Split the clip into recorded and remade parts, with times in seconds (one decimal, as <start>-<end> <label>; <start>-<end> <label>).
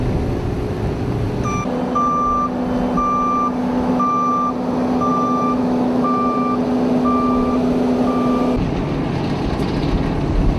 0.0-3.6 recorded; 3.6-4.3 remade; 4.3-5.1 recorded; 5.1-6.6 remade; 6.6-10.6 recorded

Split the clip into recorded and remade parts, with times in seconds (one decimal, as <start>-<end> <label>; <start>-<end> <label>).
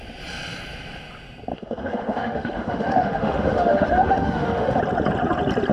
0.0-1.5 recorded; 1.5-4.8 remade; 4.8-5.7 recorded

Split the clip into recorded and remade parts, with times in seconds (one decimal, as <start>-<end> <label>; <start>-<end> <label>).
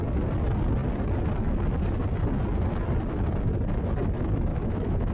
0.0-4.5 recorded; 4.5-5.1 remade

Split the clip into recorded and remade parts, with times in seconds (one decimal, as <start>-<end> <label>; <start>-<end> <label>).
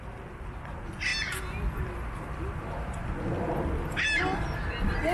0.0-5.1 recorded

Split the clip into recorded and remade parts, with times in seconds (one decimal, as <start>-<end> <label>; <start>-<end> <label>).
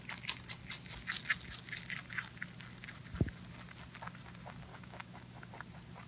0.0-4.7 recorded; 4.7-5.5 remade; 5.5-6.1 recorded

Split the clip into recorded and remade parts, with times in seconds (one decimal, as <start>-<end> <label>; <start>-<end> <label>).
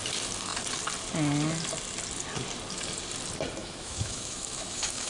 0.0-3.6 recorded; 3.6-5.1 remade